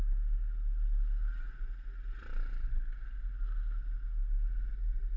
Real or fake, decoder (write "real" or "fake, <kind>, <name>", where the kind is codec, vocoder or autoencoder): real